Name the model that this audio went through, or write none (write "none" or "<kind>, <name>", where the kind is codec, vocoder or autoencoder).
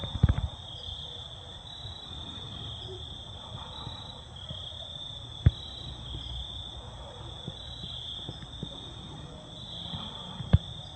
none